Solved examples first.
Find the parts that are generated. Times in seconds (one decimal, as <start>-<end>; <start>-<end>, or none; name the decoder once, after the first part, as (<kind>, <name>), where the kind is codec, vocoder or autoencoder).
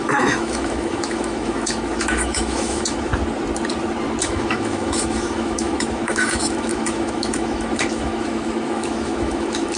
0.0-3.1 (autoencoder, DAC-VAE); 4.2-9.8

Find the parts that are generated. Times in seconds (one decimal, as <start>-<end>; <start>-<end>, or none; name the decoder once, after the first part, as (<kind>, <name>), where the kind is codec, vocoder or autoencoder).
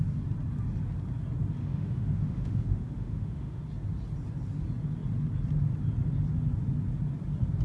1.6-3.6 (autoencoder, DAC-VAE)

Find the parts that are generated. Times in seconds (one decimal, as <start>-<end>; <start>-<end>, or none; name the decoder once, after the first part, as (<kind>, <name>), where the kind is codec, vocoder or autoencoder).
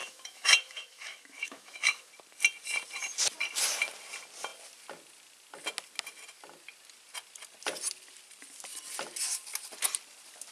0.0-2.1 (autoencoder, DAC-VAE)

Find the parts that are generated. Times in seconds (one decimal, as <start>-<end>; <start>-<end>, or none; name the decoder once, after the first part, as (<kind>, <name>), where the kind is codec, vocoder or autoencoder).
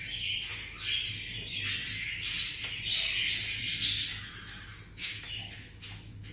5.0-6.3 (autoencoder, DAC-VAE)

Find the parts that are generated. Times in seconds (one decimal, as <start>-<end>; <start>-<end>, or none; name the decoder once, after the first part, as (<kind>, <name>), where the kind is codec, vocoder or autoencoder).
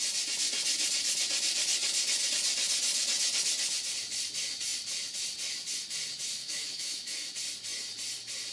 6.4-7.3 (autoencoder, DAC-VAE)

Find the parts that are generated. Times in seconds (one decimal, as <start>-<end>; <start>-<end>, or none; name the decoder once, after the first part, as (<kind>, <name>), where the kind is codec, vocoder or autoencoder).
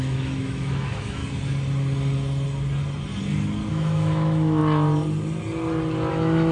0.0-1.2 (autoencoder, DAC-VAE); 3.7-4.6; 6.1-6.5